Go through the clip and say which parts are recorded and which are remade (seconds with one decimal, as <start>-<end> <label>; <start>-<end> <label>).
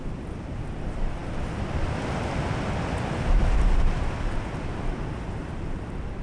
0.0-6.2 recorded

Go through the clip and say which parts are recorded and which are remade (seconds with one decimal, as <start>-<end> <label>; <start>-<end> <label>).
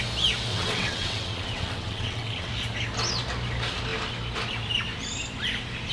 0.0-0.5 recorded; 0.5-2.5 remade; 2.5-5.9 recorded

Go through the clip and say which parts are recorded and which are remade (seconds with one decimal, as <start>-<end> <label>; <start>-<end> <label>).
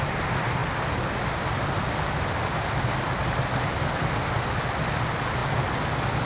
0.0-6.3 recorded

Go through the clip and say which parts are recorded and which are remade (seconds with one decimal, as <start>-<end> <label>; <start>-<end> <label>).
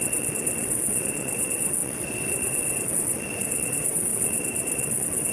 0.0-5.3 remade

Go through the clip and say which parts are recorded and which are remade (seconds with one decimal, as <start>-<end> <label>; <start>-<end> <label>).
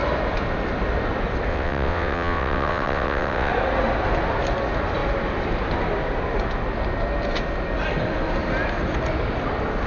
0.0-1.5 recorded; 1.5-3.5 remade; 3.5-9.9 recorded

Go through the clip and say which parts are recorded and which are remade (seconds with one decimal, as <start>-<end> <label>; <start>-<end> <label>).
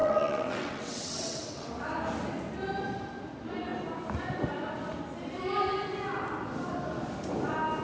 0.0-1.7 remade; 1.7-7.8 recorded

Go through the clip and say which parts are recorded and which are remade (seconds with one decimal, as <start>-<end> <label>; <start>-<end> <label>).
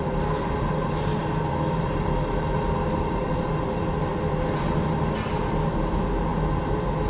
0.0-7.1 recorded